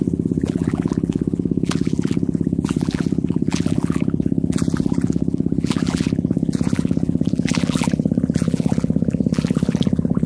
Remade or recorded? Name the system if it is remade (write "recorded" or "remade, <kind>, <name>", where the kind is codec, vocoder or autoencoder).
remade, vocoder, BigVGAN v2